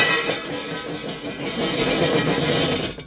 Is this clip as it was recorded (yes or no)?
yes